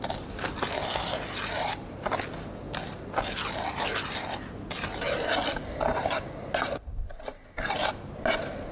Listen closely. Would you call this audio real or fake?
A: real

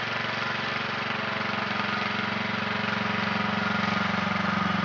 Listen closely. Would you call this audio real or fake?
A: real